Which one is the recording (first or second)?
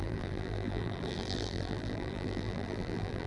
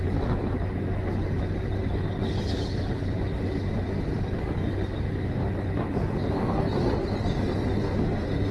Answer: second